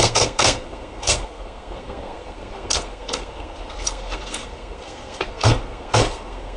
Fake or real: fake